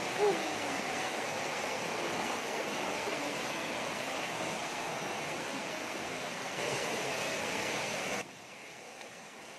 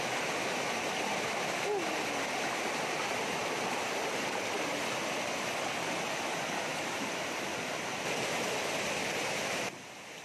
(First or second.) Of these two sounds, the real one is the second